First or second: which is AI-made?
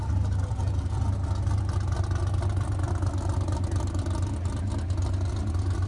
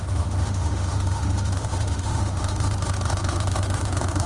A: second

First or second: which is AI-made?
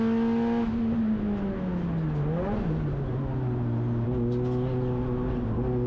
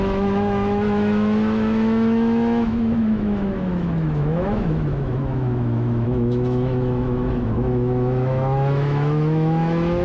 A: second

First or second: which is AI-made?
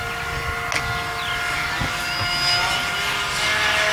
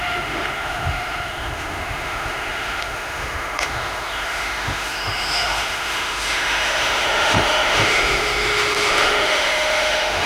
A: second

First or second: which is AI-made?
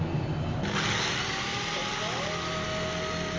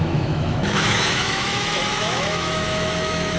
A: second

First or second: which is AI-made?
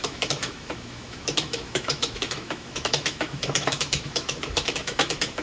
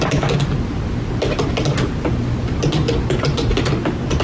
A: first